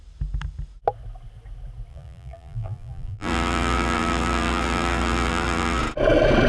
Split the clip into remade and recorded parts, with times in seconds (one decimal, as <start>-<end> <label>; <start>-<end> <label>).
0.0-1.9 recorded; 1.9-5.8 remade; 5.8-6.5 recorded